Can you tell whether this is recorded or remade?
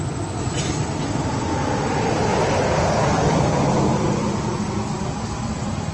recorded